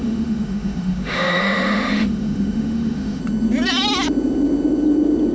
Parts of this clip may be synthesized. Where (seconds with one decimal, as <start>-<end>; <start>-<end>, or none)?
0.0-3.2